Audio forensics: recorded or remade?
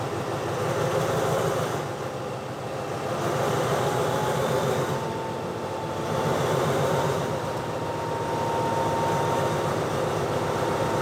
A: recorded